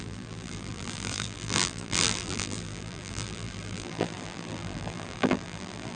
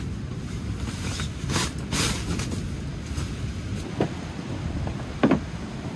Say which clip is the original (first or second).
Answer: second